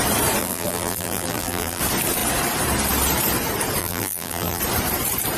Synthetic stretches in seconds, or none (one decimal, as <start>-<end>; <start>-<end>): 0.4-1.8; 3.8-4.6